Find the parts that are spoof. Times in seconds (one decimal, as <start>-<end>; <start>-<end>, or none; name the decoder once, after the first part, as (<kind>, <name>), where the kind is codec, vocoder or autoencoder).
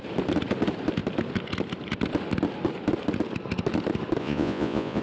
4.2-5.0 (vocoder, Vocos)